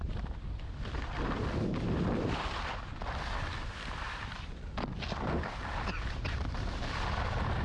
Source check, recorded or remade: recorded